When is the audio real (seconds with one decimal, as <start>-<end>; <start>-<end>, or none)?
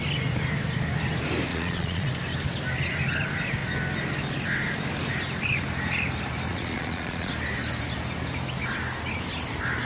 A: 0.0-1.5; 2.1-6.5; 7.3-9.8